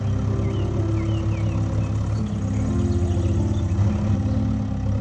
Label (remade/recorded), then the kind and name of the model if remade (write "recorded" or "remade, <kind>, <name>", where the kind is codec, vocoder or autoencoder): recorded